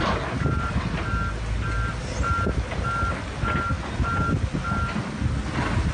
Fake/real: real